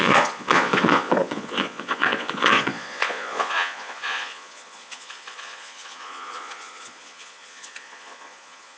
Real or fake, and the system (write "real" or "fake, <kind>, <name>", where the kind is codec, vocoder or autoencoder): fake, vocoder, Vocos